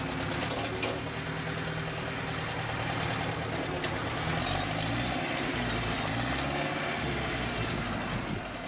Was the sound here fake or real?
real